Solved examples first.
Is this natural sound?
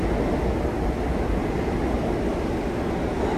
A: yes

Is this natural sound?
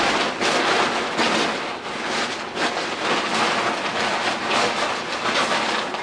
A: yes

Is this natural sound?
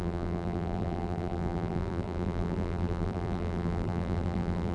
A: no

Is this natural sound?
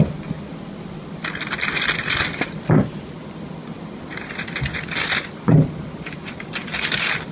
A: yes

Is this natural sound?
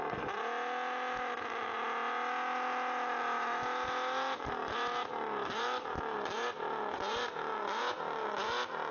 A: yes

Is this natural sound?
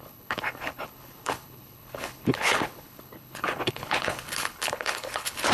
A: no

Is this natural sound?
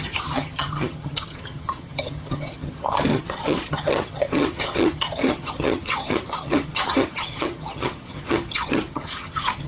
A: no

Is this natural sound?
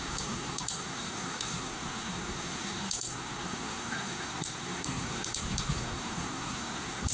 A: no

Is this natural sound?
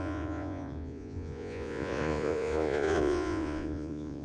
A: no